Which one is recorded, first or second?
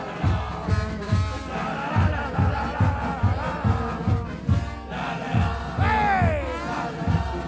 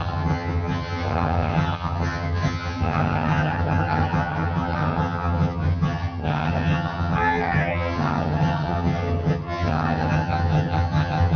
first